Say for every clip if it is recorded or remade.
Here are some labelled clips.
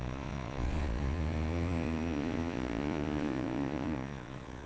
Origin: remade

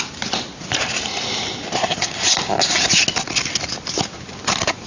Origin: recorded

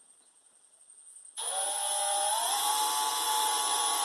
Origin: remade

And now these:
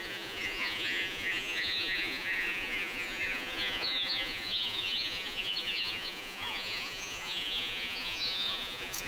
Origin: remade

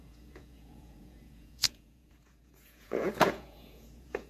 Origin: remade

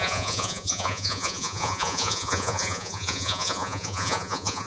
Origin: remade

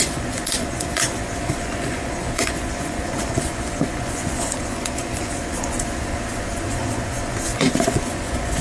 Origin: remade